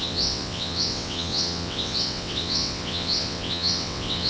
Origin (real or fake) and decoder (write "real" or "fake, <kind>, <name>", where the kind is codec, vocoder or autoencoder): fake, vocoder, WaveNeXt